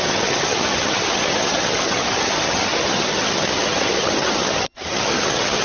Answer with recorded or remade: remade